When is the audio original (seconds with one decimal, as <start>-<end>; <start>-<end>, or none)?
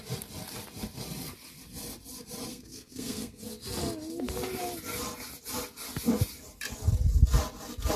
0.0-2.5; 3.4-8.0